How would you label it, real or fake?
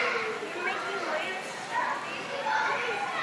real